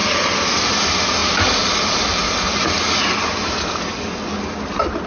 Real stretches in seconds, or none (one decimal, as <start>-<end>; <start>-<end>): 0.0-5.1